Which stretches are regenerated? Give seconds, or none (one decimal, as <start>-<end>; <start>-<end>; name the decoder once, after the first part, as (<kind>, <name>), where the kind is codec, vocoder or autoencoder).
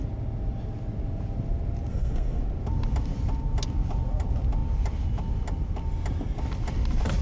1.9-2.4 (codec, SNAC)